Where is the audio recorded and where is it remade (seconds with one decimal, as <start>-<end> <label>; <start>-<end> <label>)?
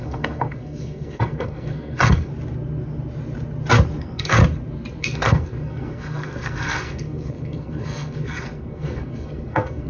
0.0-2.3 remade; 2.3-4.0 recorded; 4.0-4.4 remade; 4.4-5.0 recorded; 5.0-9.9 remade